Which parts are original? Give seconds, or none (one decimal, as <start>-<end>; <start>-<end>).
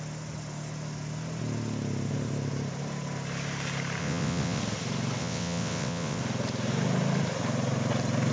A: 0.0-4.0; 4.6-5.2; 6.2-8.3